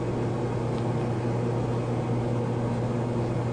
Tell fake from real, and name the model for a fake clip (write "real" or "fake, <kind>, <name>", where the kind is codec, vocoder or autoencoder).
real